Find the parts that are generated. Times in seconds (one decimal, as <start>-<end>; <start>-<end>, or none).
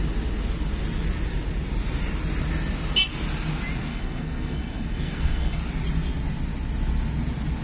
3.9-5.6